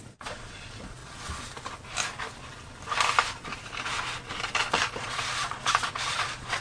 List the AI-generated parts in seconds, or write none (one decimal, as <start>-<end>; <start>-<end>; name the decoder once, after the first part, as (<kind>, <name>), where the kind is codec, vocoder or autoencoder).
0.0-1.0 (vocoder, Vocos); 5.0-6.6